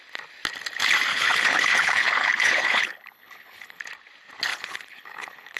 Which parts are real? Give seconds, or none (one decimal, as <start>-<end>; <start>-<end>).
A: 0.0-1.1; 3.8-4.5